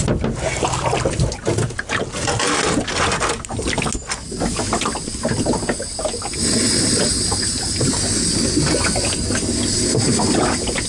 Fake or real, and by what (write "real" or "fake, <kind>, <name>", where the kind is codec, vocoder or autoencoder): real